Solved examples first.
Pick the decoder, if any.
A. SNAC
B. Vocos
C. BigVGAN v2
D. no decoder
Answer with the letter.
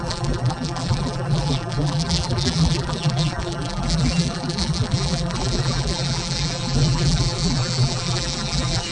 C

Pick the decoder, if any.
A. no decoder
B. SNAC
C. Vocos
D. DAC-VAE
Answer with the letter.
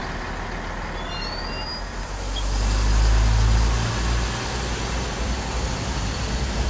A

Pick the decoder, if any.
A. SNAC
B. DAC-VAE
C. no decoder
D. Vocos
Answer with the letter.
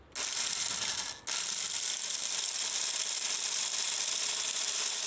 C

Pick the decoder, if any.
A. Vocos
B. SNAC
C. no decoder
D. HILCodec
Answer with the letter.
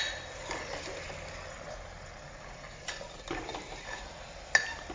C